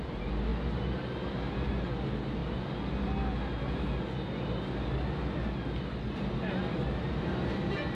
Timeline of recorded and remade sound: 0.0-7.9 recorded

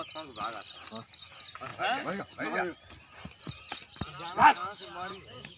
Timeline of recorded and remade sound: 0.0-4.4 recorded; 4.4-5.6 remade

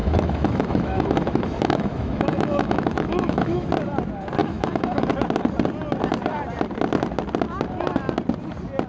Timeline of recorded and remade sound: 0.0-3.7 remade; 3.7-4.4 recorded; 4.4-5.1 remade; 5.1-8.9 recorded

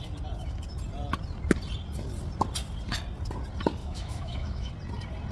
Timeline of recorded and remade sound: 0.0-3.8 recorded; 3.8-4.7 remade; 4.7-5.3 recorded

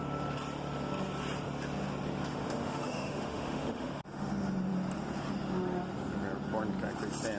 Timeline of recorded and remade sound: 0.0-2.3 recorded; 2.3-4.3 remade; 4.3-7.4 recorded

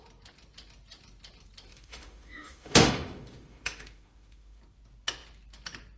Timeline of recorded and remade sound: 0.0-1.7 recorded; 1.7-4.6 remade; 4.6-6.0 recorded

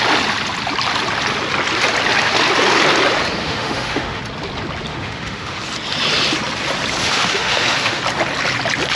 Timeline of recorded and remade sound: 0.0-3.4 recorded; 3.4-4.2 remade; 4.2-4.9 recorded; 4.9-5.6 remade; 5.6-7.0 recorded; 7.0-8.0 remade; 8.0-9.0 recorded